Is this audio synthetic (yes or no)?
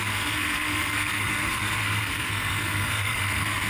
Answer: yes